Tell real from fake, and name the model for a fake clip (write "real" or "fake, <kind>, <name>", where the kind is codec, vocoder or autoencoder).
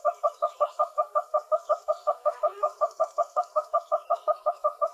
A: fake, codec, SNAC